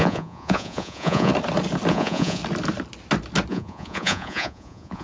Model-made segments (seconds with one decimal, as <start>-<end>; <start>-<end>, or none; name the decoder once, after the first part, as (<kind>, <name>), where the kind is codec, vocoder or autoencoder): 0.0-1.3 (vocoder, Vocos); 1.9-2.4; 3.5-5.0